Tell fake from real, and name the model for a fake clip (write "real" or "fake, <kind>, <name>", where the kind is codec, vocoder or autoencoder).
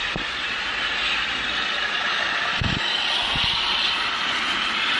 fake, vocoder, BigVGAN v2